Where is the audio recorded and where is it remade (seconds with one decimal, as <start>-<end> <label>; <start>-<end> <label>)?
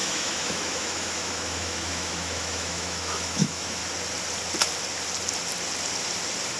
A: 0.0-3.8 remade; 3.8-6.6 recorded